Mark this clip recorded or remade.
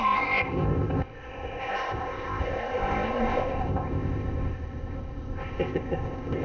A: remade